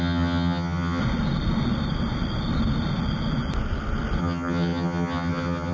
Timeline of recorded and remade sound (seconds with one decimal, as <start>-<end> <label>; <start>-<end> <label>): 0.0-1.0 remade; 1.0-4.2 recorded; 4.2-5.7 remade